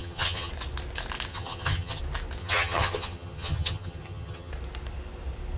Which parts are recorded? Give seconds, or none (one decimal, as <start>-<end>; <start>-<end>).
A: 0.5-1.3; 2.0-2.4; 4.5-5.6